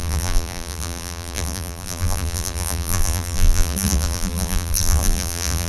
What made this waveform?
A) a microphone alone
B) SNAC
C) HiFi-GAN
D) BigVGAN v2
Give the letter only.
D